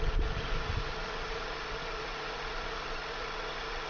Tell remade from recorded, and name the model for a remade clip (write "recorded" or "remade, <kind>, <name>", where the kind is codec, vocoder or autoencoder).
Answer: recorded